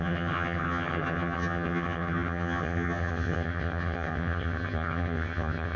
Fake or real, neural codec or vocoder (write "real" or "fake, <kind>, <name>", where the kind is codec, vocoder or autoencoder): fake, vocoder, HiFi-GAN